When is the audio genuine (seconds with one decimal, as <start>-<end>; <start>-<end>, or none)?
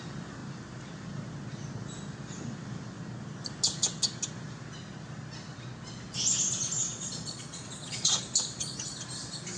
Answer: 0.0-6.8; 8.2-9.6